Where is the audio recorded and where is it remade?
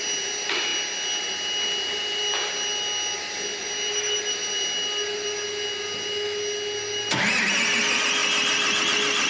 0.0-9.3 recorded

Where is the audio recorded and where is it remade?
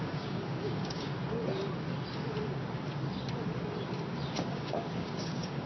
0.0-1.1 remade; 1.1-4.5 recorded; 4.5-5.7 remade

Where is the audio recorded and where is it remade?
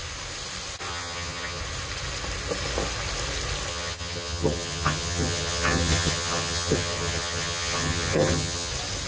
0.0-0.9 recorded; 0.9-1.6 remade; 1.6-3.7 recorded; 3.7-8.7 remade; 8.7-9.1 recorded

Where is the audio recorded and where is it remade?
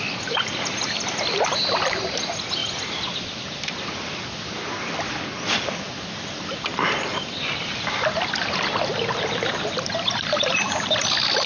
0.0-11.5 recorded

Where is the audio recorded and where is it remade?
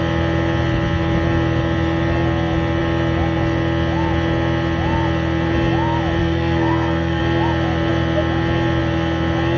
0.0-6.2 recorded; 6.2-7.2 remade; 7.2-9.6 recorded